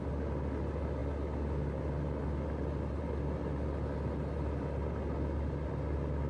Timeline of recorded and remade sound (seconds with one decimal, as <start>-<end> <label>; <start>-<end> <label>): 0.0-6.3 recorded